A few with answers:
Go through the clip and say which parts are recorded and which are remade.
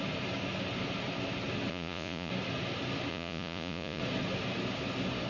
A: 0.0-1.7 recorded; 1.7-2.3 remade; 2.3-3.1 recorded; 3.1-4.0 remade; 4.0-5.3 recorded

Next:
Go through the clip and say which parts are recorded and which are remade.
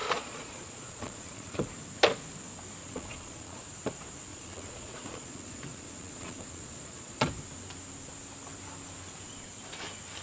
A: 0.0-1.7 remade; 1.7-2.8 recorded; 2.8-3.6 remade; 3.6-4.3 recorded; 4.3-7.3 remade; 7.3-10.2 recorded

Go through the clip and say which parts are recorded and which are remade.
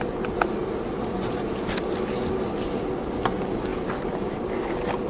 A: 0.0-5.1 recorded